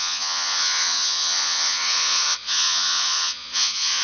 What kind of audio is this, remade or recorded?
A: remade